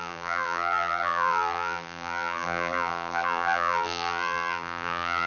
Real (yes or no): no